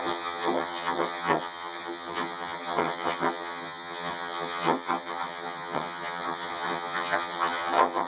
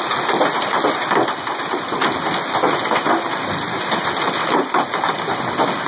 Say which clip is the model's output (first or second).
first